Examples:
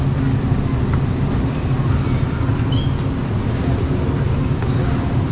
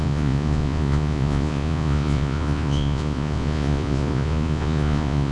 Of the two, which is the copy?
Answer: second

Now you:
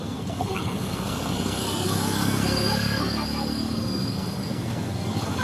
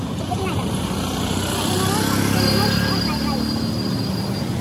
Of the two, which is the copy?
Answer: first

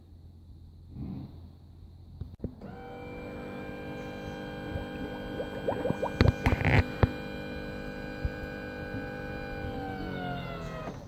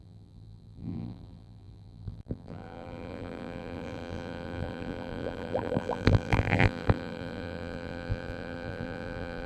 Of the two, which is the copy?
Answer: second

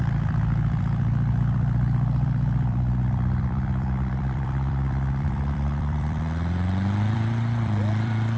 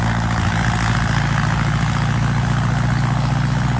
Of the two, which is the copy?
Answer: first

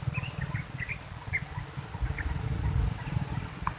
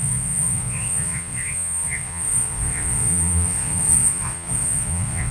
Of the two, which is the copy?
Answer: second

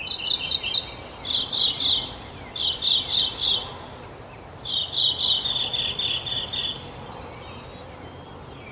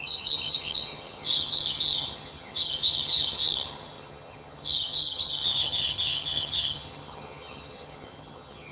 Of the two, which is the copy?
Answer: second